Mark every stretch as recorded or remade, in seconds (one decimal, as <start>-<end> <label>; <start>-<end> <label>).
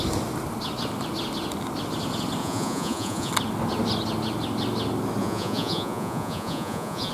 0.0-2.4 recorded; 2.4-3.3 remade; 3.3-5.2 recorded; 5.2-7.1 remade